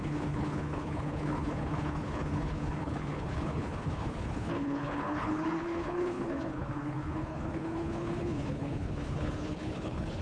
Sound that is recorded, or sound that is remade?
remade